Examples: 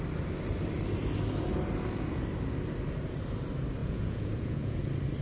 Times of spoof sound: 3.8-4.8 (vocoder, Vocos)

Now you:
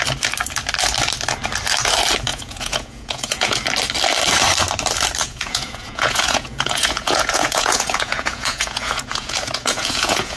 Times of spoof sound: 2.3-3.6 (vocoder, Vocos); 5.2-10.4

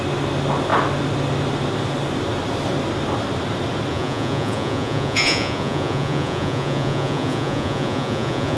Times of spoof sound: 3.9-8.6 (vocoder, Vocos)

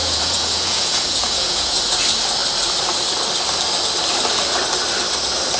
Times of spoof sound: 0.0-1.8 (vocoder, Vocos)

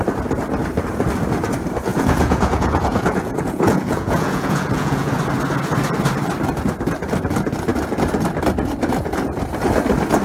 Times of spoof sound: 1.9-5.1 (vocoder, Vocos)

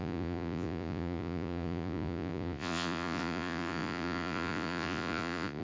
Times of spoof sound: 0.0-5.6 (vocoder, Vocos)